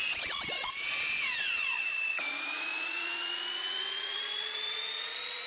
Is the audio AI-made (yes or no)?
yes